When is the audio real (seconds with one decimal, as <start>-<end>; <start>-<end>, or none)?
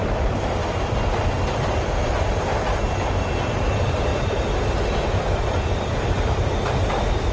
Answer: 0.6-1.5; 2.5-3.4; 4.1-5.4